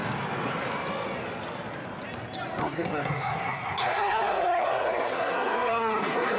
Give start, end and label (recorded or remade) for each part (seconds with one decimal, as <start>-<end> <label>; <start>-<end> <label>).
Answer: 0.0-2.6 recorded; 2.6-6.4 remade